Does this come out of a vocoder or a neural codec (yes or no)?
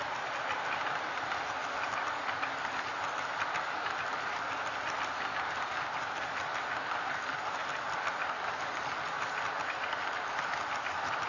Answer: no